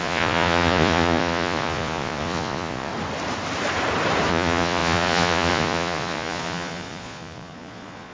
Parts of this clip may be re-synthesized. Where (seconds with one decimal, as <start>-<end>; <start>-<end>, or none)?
0.0-2.9; 4.3-8.1